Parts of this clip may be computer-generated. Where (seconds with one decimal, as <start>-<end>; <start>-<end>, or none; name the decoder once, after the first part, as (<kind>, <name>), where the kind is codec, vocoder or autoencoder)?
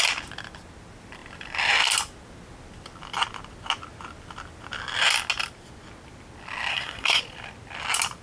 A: 6.7-7.2 (codec, SNAC)